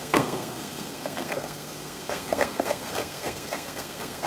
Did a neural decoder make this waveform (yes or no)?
yes